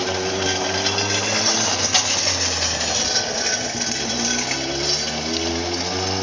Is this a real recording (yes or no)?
yes